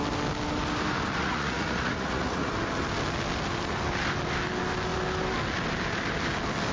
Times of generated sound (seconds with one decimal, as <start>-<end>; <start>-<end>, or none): 1.2-2.5